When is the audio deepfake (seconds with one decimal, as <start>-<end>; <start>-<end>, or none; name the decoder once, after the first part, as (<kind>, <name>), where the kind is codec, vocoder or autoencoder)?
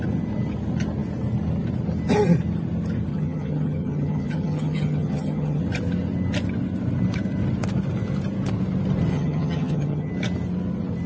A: 3.1-5.6 (vocoder, HiFi-GAN); 9.1-10.1